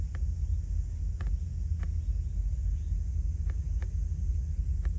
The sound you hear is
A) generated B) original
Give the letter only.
B